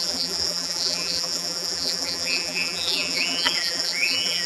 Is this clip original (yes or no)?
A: no